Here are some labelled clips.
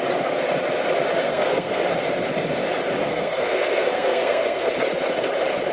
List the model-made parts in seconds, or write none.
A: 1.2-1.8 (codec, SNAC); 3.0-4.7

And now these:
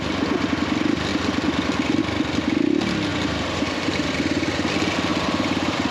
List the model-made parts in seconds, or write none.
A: 3.1-4.1 (vocoder, BigVGAN v2); 5.1-5.9

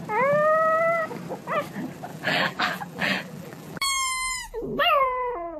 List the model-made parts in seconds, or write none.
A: 2.1-5.6 (vocoder, BigVGAN v2)

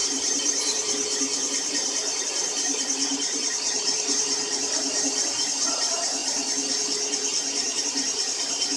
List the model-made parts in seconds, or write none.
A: 0.0-6.2 (vocoder, BigVGAN v2); 7.8-8.8